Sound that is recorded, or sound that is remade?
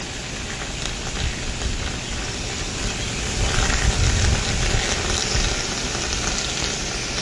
recorded